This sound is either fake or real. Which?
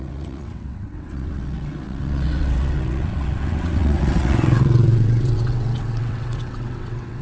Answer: fake